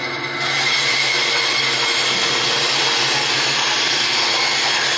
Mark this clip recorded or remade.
recorded